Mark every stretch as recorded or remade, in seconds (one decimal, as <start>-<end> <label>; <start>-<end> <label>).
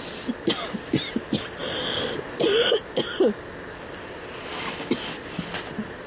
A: 0.0-6.1 recorded